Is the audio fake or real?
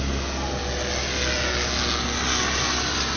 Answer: real